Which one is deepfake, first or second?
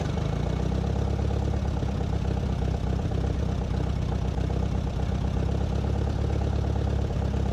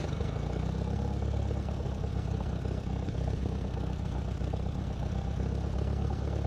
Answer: second